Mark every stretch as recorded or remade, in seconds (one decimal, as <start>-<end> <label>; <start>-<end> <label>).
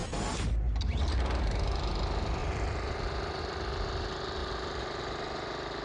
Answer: 0.0-0.8 remade; 0.8-2.4 recorded; 2.4-3.4 remade; 3.4-4.4 recorded; 4.4-5.0 remade; 5.0-5.8 recorded